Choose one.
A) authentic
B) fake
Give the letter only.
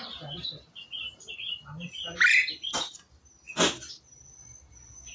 A